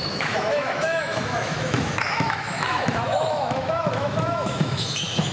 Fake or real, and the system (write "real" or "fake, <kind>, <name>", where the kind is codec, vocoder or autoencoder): fake, autoencoder, DAC-VAE